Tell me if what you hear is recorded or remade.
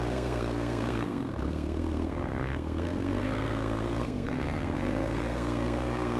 remade